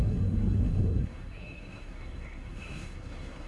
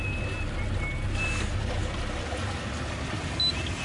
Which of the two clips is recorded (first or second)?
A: second